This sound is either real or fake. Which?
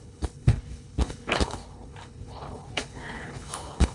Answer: fake